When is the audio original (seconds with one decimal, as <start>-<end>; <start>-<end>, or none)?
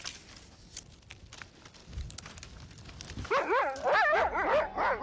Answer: 0.0-5.0